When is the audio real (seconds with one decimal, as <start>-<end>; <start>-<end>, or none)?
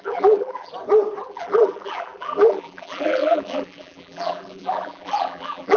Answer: 0.7-1.2